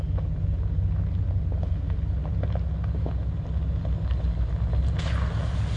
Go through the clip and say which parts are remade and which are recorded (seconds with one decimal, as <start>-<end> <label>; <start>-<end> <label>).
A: 0.0-5.8 recorded